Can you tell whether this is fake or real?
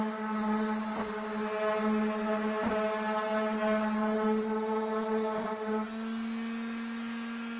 real